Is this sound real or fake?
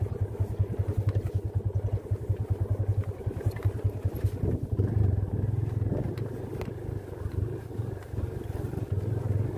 real